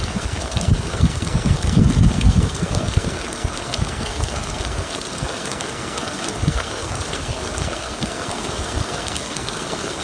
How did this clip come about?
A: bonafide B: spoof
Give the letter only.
B